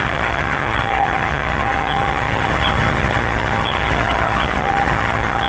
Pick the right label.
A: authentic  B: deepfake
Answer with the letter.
B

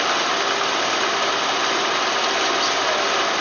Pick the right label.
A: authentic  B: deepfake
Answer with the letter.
A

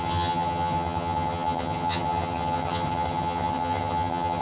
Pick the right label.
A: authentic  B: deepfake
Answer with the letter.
B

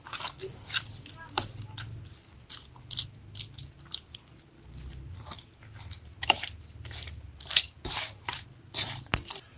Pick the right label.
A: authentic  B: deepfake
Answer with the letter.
A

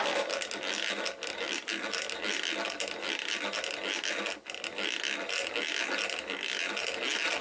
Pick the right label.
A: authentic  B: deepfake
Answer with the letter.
A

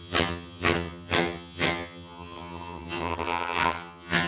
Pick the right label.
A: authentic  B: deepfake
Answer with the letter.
B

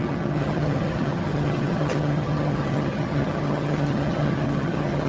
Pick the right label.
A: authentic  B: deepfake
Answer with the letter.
B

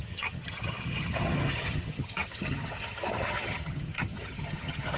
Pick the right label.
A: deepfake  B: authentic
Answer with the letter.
A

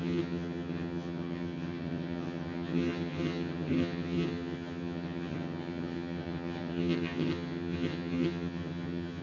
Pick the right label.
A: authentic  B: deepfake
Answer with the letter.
B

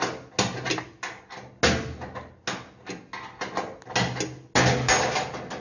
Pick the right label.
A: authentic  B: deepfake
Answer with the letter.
A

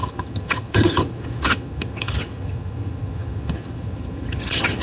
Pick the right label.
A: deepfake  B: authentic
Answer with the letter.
A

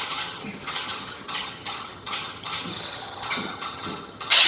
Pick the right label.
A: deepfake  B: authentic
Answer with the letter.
A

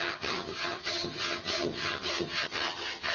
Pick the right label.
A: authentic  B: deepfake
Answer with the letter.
B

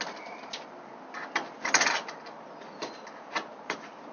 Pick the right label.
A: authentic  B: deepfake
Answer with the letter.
A